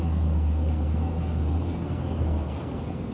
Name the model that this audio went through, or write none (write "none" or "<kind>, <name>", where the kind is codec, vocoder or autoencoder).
codec, SNAC